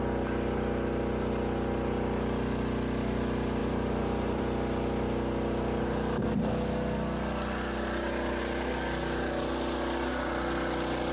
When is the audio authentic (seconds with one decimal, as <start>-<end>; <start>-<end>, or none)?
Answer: 0.0-3.6; 4.4-11.1